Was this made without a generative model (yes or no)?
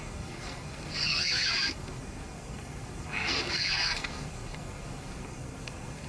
no